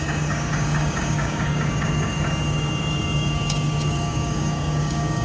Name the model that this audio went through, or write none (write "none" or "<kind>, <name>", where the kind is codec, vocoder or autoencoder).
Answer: codec, DAC